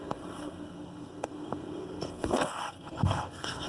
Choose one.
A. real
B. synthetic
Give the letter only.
B